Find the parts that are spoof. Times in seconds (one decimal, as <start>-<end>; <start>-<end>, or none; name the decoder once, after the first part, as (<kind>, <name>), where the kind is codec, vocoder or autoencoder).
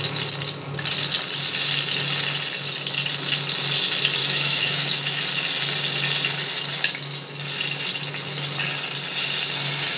4.2-5.2 (autoencoder, DAC-VAE)